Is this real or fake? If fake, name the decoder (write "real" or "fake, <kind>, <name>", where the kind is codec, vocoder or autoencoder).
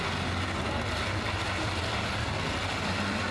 real